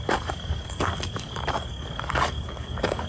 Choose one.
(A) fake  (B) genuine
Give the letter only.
A